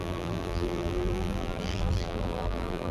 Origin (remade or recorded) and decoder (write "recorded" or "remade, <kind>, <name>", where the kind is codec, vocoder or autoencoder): remade, vocoder, BigVGAN v2